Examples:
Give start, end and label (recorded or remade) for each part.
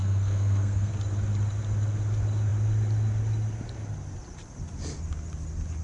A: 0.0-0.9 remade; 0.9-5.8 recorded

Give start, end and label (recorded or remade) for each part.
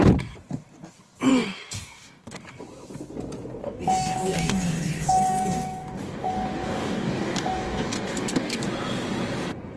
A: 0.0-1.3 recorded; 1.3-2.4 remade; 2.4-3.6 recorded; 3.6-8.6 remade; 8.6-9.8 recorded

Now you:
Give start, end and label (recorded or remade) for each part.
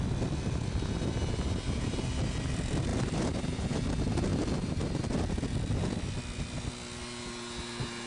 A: 0.0-8.1 recorded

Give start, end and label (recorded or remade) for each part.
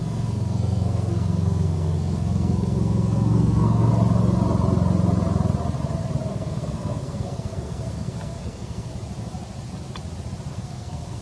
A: 0.0-3.9 remade; 3.9-6.3 recorded; 6.3-8.9 remade; 8.9-10.5 recorded; 10.5-11.2 remade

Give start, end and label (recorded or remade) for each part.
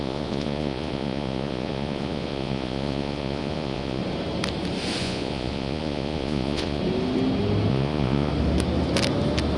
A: 0.0-4.0 remade; 4.0-5.0 recorded; 5.0-6.8 remade; 6.8-7.7 recorded; 7.7-8.3 remade; 8.3-9.6 recorded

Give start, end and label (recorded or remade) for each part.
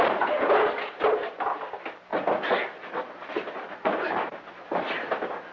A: 0.0-5.5 recorded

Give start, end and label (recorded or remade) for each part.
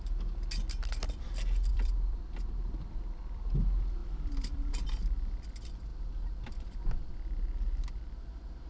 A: 0.0-1.7 recorded; 1.7-3.5 remade; 3.5-4.0 recorded; 4.0-4.7 remade; 4.7-8.7 recorded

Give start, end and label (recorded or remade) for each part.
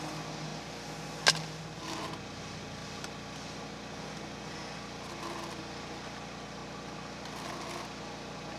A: 0.0-8.6 recorded